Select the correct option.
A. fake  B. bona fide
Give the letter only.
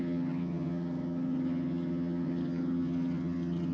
A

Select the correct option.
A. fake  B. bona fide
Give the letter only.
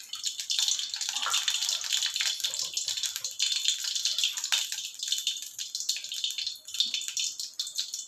B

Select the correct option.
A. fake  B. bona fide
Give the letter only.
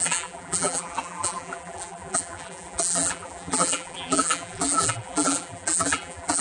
A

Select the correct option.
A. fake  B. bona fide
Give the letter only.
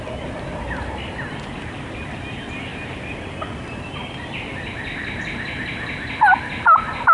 B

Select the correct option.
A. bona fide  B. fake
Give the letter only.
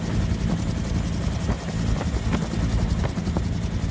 A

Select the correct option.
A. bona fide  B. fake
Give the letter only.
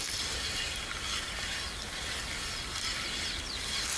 A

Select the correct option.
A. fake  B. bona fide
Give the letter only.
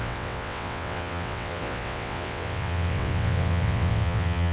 A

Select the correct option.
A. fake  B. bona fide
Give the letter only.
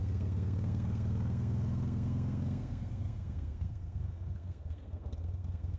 A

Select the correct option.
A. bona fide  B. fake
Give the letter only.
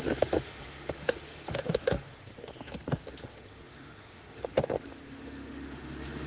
B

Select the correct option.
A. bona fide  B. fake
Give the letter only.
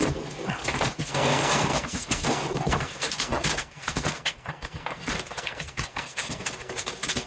B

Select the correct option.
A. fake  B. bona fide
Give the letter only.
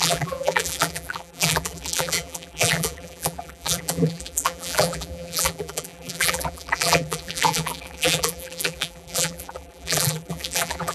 A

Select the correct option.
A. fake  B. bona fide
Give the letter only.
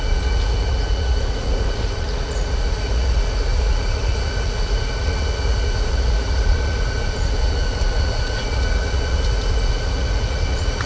A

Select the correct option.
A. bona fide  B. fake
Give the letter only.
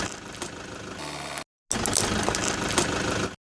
A